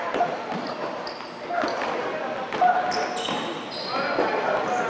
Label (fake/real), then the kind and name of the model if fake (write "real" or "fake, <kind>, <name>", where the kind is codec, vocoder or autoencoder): real